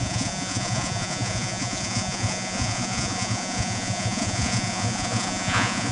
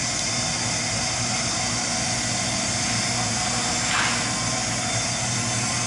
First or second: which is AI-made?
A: first